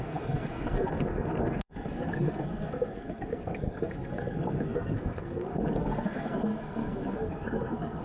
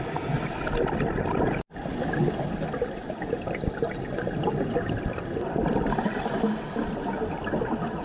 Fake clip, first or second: first